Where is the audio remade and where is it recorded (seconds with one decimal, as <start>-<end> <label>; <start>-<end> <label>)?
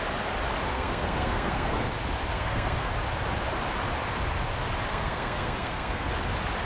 0.0-0.7 recorded; 0.7-1.9 remade; 1.9-2.3 recorded; 2.3-2.9 remade; 2.9-4.9 recorded; 4.9-6.1 remade; 6.1-6.7 recorded